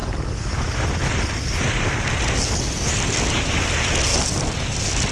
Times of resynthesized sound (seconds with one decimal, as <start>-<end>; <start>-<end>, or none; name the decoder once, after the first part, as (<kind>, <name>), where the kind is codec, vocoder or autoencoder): none